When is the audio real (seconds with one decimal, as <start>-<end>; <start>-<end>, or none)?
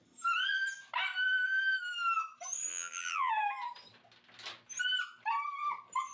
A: 0.0-2.7; 3.3-6.1